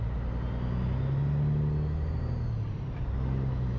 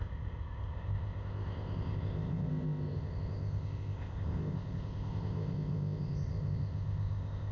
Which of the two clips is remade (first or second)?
second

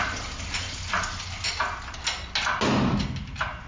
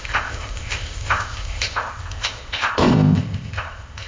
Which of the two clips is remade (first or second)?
second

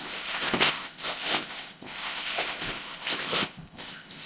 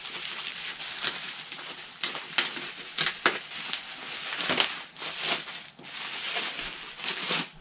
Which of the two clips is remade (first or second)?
first